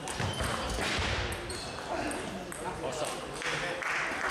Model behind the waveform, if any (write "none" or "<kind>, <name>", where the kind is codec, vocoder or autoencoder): none